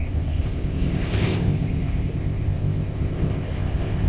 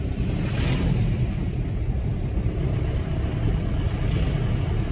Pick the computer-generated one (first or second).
first